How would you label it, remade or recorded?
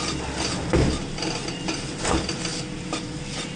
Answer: recorded